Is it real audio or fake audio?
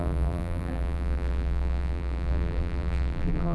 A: fake